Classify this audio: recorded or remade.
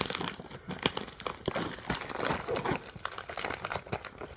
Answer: recorded